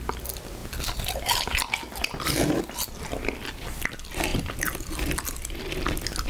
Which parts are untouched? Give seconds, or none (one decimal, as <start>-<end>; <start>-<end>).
0.0-6.3